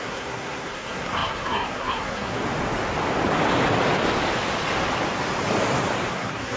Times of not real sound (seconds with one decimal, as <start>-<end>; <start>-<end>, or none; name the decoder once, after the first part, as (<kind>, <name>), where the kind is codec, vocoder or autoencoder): 0.0-2.4 (codec, SNAC); 6.1-6.6